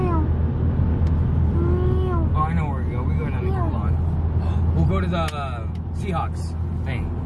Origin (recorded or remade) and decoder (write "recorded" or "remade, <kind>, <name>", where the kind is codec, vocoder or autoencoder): recorded